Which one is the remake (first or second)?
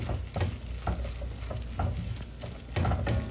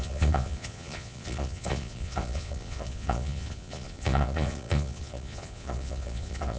second